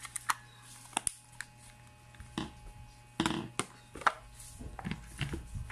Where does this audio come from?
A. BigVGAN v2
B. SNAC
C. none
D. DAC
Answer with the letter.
C